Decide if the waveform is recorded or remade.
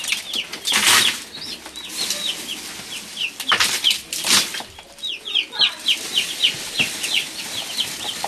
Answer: recorded